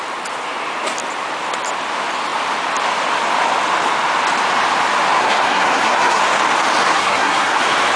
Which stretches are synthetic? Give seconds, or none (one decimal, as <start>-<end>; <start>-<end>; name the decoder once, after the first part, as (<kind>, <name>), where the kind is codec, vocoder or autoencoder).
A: 5.2-6.2 (codec, SNAC); 6.9-7.6